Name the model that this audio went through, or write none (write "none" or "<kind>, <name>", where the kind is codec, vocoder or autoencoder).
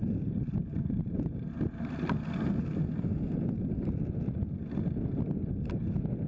none